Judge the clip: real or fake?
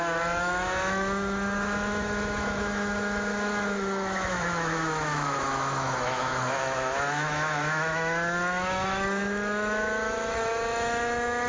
fake